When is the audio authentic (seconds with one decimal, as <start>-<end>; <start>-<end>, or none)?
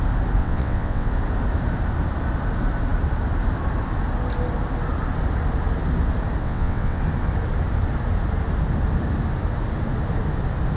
0.0-0.4; 1.1-6.4; 7.0-10.8